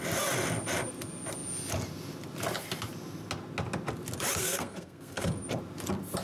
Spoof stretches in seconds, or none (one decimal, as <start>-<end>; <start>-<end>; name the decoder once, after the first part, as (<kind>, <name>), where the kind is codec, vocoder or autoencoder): 4.4-5.3 (codec, SNAC)